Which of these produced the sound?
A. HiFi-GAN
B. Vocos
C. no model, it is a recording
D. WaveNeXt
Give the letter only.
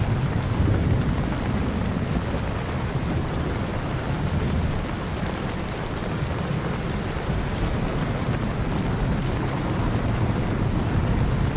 C